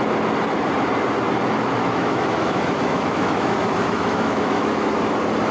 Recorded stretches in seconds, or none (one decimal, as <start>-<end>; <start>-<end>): 0.0-1.8; 5.1-5.5